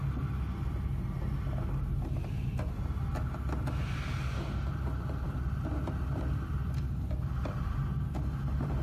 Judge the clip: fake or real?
real